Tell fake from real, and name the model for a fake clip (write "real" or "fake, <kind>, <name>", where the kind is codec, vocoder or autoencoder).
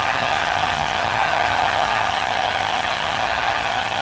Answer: fake, vocoder, HiFi-GAN